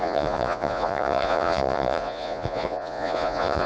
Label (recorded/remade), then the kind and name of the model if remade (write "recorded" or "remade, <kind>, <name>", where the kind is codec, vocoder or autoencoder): remade, vocoder, Vocos